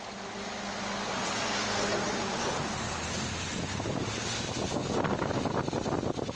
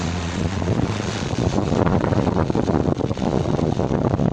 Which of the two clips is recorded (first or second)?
first